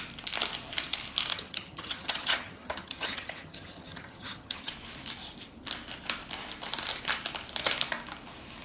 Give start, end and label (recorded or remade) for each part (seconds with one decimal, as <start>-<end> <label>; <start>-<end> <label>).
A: 0.0-1.3 recorded; 1.3-4.7 remade; 4.7-8.6 recorded